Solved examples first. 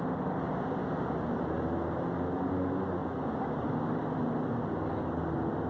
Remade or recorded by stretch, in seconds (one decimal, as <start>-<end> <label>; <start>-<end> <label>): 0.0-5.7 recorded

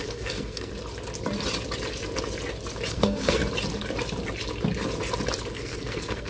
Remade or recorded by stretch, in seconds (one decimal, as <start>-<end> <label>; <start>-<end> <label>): 0.0-0.7 remade; 0.7-2.9 recorded; 2.9-3.4 remade; 3.4-5.5 recorded; 5.5-6.3 remade

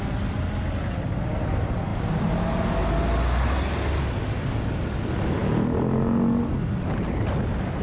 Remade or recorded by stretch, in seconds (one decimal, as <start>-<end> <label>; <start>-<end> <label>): 0.0-7.8 recorded

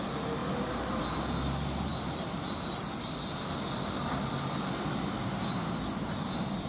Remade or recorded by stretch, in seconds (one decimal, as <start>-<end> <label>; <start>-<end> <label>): 0.0-1.9 recorded; 1.9-5.3 remade; 5.3-6.7 recorded

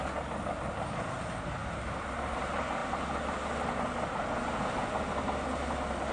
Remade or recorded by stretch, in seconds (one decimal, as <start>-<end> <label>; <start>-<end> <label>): 0.0-1.6 recorded; 1.6-2.4 remade; 2.4-6.1 recorded

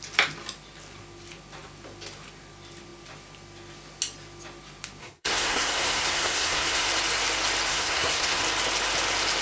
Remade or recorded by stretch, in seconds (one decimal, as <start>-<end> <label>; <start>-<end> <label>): 0.0-5.0 recorded; 5.0-6.9 remade; 6.9-7.7 recorded; 7.7-8.4 remade; 8.4-9.4 recorded

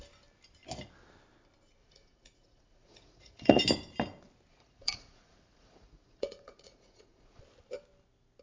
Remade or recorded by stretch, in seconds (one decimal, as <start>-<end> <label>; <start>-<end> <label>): 0.0-1.8 recorded; 1.8-3.6 remade; 3.6-4.5 recorded; 4.5-7.4 remade; 7.4-8.4 recorded